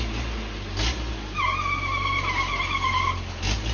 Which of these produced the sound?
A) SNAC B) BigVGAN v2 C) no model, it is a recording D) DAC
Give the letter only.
C